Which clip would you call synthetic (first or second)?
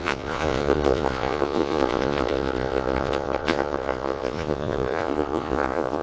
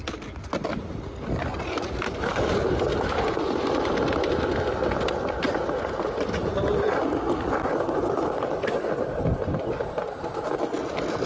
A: first